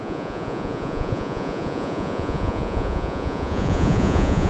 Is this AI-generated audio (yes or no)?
yes